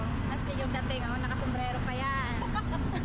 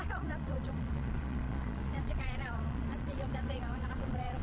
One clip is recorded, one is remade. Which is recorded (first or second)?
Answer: first